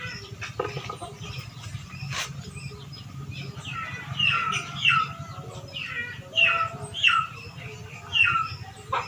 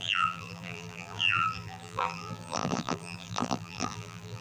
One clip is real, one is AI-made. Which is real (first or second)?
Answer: first